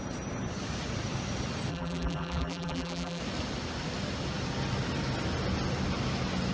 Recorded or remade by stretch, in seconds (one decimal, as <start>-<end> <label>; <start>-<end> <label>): 0.0-1.7 recorded; 1.7-3.2 remade; 3.2-6.5 recorded